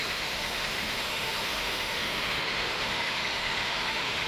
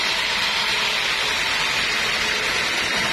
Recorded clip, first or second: second